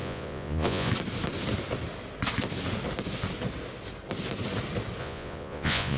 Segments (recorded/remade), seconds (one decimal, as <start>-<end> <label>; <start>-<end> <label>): 0.0-0.9 remade; 0.9-5.0 recorded; 5.0-6.0 remade